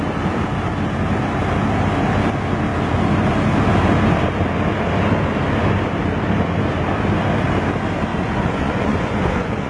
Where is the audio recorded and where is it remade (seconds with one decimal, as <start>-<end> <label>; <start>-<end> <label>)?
0.0-8.1 recorded; 8.1-9.7 remade